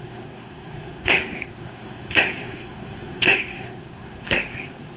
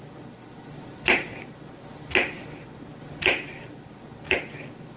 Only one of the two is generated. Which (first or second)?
first